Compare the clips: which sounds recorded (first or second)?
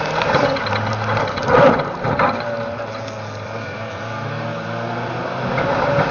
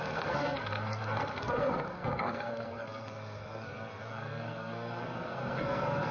first